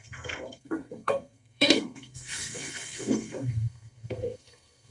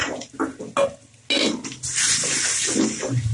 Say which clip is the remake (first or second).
first